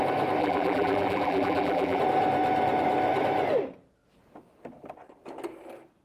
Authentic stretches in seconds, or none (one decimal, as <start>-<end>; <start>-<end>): 0.0-0.4; 2.0-6.0